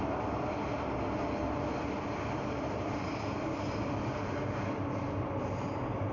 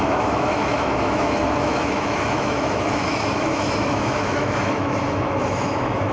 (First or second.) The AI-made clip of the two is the second